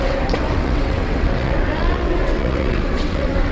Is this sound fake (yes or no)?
yes